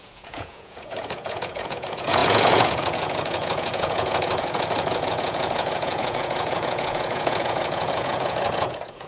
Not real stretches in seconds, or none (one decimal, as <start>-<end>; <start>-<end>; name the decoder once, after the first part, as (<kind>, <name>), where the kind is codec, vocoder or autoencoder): 0.0-9.1 (vocoder, Vocos)